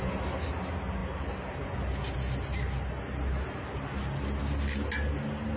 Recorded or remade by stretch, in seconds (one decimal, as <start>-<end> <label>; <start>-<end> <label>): 0.0-5.6 recorded